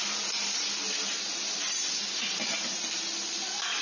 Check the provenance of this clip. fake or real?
real